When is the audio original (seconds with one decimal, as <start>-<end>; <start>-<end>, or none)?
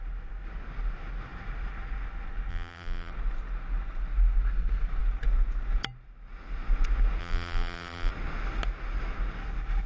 0.0-2.5; 3.1-7.2; 8.1-9.9